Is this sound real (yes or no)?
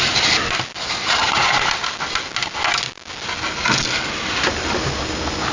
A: yes